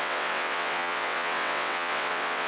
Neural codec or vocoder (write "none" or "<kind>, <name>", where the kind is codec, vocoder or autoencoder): vocoder, WaveNeXt